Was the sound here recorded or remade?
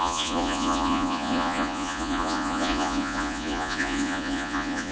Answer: remade